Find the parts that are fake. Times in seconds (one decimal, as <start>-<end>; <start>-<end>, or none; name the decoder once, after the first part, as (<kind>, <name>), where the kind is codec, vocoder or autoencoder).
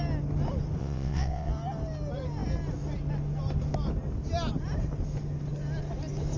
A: 0.8-1.5 (vocoder, WaveNeXt)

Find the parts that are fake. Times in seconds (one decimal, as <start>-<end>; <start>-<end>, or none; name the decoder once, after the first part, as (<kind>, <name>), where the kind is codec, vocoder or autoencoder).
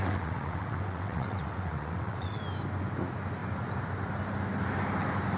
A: 0.0-2.4 (vocoder, WaveNeXt)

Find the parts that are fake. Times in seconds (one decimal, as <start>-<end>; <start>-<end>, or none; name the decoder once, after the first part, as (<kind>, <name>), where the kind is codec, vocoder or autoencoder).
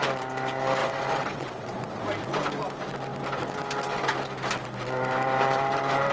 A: 0.8-2.0 (vocoder, WaveNeXt)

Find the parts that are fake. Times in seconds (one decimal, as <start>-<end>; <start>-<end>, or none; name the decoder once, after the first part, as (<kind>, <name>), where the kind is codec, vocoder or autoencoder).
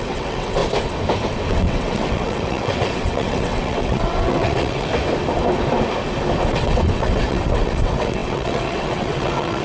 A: 0.0-0.6 (vocoder, WaveNeXt); 1.5-4.9; 6.5-9.6